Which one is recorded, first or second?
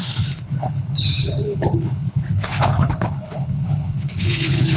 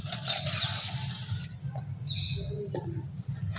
second